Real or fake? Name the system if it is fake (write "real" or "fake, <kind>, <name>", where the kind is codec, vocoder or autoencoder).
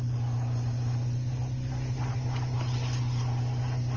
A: real